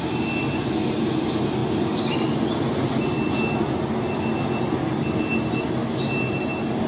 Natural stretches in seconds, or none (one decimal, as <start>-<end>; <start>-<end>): 0.0-6.9